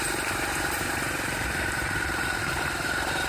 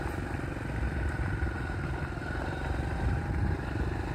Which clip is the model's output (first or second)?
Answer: first